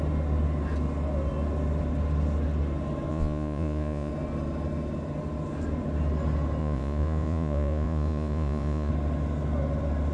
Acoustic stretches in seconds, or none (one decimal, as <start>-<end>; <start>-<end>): 0.0-3.1; 4.1-6.6; 8.9-10.1